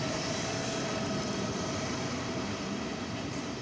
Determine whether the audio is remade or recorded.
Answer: remade